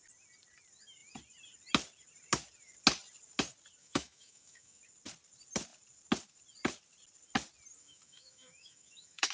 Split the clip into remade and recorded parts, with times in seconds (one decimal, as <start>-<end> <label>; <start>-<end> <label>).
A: 0.0-3.8 recorded; 3.8-4.8 remade; 4.8-7.8 recorded; 7.8-9.3 remade